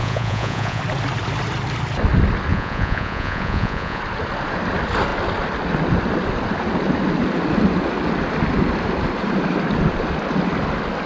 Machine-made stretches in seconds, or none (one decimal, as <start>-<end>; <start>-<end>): 0.0-0.8; 2.5-4.0